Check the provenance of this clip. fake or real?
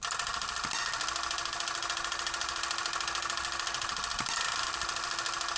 real